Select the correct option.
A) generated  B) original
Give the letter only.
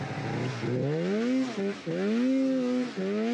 B